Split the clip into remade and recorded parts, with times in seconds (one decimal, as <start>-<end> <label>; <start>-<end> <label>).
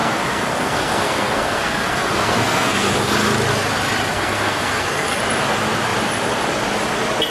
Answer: 0.0-3.1 remade; 3.1-4.1 recorded; 4.1-5.2 remade; 5.2-7.3 recorded